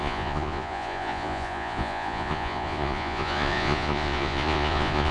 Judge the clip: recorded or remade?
remade